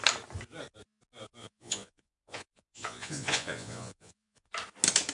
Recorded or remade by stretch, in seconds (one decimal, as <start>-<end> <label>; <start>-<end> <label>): 0.0-1.4 recorded; 1.4-4.5 remade; 4.5-5.1 recorded